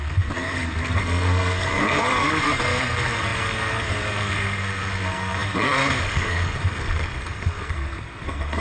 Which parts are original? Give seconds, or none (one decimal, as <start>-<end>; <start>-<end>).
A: none